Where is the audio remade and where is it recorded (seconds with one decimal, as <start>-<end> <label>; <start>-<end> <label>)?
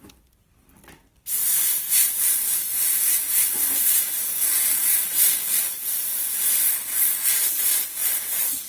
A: 0.0-1.7 recorded; 1.7-6.4 remade; 6.4-8.7 recorded